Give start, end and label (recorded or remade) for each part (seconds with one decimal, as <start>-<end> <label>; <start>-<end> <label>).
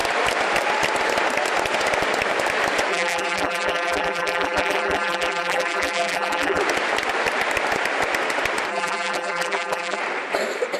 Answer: 0.0-2.9 recorded; 2.9-6.6 remade; 6.6-8.7 recorded; 8.7-10.0 remade; 10.0-10.8 recorded